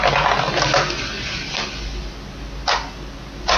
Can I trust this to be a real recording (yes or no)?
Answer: yes